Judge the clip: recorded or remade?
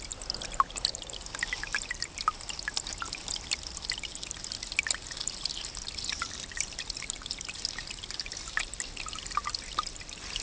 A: recorded